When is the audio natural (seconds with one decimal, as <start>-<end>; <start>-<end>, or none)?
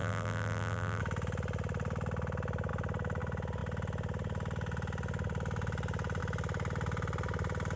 1.0-7.8